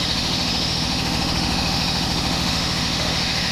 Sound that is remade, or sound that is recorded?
remade